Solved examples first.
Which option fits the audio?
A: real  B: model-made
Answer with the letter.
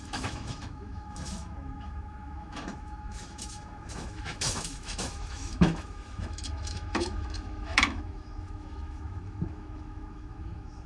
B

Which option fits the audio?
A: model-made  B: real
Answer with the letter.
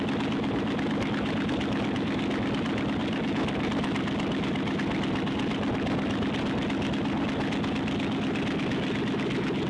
B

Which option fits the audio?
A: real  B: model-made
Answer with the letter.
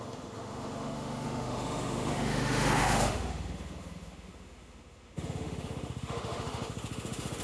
B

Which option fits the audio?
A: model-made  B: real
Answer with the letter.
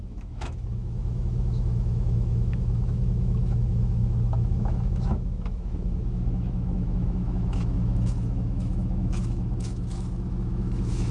A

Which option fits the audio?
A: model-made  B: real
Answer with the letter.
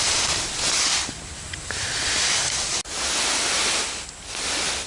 B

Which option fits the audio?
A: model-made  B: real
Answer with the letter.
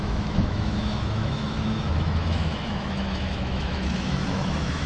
A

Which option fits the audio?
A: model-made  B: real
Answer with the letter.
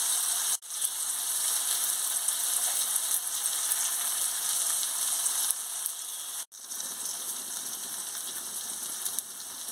B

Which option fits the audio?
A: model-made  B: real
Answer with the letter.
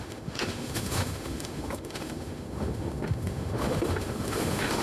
A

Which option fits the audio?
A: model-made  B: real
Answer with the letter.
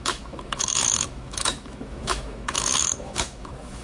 A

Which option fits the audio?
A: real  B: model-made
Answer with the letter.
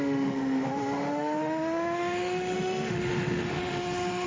B